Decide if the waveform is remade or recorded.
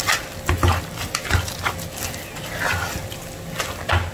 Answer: recorded